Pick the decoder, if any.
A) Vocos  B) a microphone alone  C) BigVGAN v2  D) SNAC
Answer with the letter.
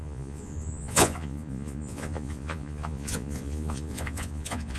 A